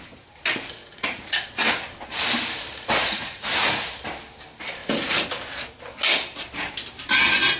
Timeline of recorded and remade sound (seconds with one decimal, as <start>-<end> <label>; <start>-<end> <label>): 0.0-0.8 recorded; 0.8-1.5 remade; 1.5-3.0 recorded; 3.0-3.5 remade; 3.5-4.8 recorded; 4.8-5.3 remade; 5.3-7.6 recorded